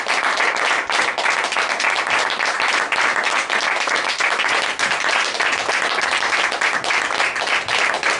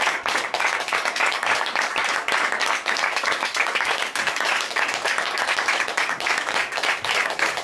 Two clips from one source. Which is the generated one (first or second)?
second